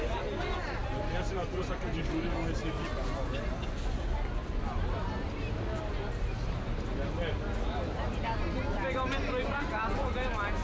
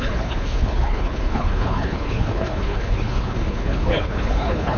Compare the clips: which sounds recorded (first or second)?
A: first